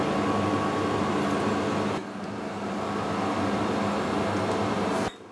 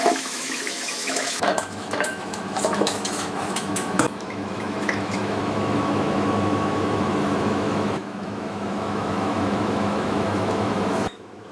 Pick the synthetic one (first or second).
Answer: second